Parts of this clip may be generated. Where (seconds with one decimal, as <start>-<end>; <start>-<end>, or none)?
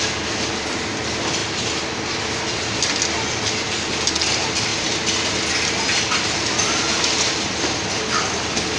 none